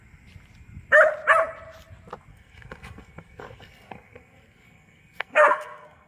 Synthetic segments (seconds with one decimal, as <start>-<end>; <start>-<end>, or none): 2.3-6.1